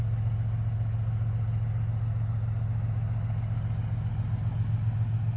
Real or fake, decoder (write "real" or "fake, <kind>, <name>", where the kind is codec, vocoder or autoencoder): real